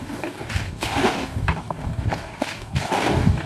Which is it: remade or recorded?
remade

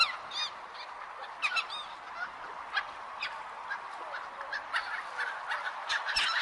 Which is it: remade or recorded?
recorded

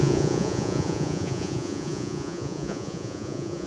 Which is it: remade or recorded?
remade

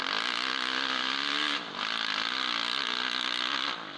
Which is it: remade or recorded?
recorded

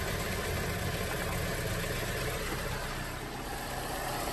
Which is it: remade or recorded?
recorded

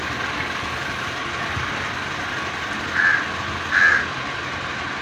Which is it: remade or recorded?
recorded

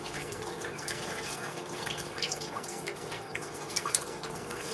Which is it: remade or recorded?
remade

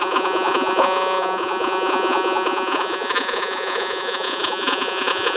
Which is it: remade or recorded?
remade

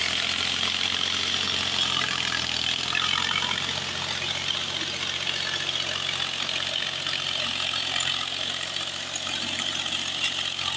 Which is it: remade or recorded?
recorded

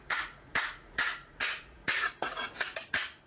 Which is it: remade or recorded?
remade